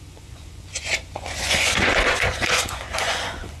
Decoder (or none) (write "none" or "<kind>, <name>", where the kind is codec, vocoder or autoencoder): vocoder, Vocos